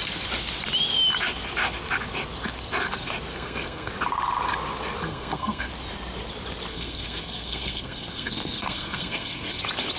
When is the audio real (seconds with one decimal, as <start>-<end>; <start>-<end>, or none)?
0.0-3.3; 3.9-5.0; 5.7-6.7; 9.6-10.0